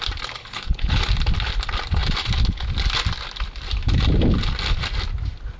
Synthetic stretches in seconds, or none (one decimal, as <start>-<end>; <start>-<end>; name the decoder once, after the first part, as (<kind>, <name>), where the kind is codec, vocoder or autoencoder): 0.4-1.0 (codec, HILCodec)